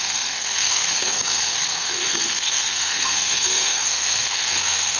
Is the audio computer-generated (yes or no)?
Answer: yes